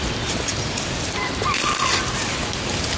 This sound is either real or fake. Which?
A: real